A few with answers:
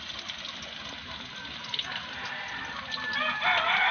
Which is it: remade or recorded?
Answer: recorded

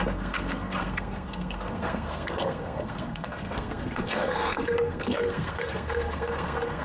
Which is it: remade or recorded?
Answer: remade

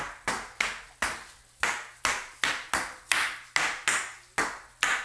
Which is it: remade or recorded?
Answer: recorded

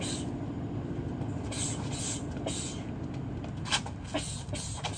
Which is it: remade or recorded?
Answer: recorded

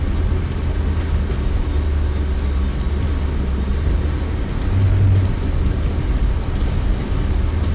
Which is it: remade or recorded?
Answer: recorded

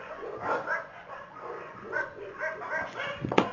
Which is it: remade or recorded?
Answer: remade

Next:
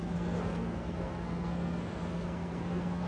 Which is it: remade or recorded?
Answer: remade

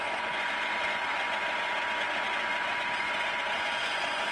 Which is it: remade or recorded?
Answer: remade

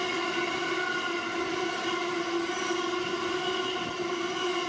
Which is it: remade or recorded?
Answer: recorded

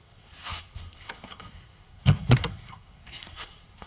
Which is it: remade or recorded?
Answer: remade